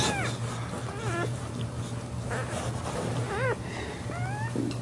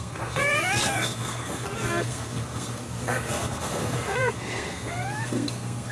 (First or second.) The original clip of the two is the first